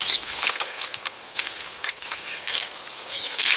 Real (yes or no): no